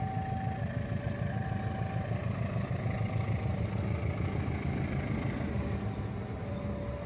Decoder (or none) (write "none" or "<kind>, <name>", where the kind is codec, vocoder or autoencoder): none